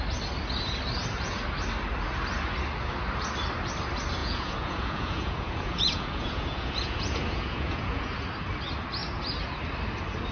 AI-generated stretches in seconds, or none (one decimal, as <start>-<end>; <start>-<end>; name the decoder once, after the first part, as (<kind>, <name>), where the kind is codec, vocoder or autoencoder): 4.2-8.2 (vocoder, Vocos)